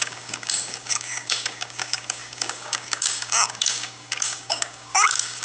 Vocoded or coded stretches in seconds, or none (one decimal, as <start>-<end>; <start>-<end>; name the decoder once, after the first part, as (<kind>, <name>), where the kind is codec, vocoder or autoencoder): 0.0-5.4 (codec, DAC)